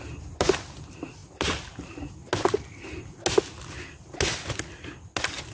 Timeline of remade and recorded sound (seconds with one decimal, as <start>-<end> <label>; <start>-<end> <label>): 0.0-5.5 recorded